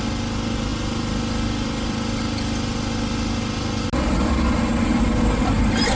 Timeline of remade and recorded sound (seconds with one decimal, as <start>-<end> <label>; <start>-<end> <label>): 0.0-6.0 recorded